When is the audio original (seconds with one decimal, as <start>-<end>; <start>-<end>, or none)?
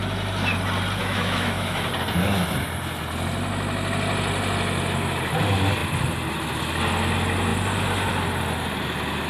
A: 0.0-1.0; 1.9-9.3